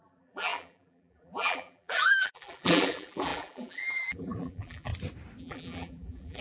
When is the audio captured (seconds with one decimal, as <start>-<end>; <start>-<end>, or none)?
4.9-5.4

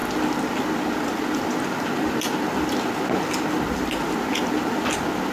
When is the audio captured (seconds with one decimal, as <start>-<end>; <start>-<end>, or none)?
0.0-5.3

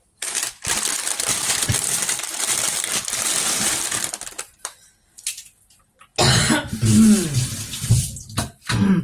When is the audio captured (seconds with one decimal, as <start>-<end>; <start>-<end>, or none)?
6.1-9.0